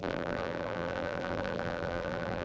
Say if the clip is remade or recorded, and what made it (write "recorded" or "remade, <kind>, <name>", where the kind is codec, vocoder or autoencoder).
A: remade, vocoder, BigVGAN v2